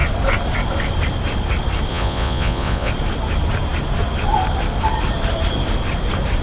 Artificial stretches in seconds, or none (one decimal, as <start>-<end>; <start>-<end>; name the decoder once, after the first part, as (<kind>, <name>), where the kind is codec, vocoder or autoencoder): 1.9-2.9 (vocoder, Vocos)